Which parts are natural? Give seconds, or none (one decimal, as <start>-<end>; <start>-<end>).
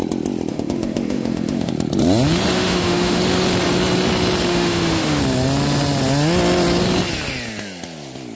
0.0-0.5; 1.7-2.5; 3.2-4.5; 5.2-8.4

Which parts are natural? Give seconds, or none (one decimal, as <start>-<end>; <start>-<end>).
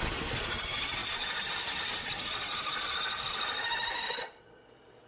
0.0-5.1